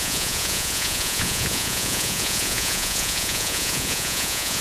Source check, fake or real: fake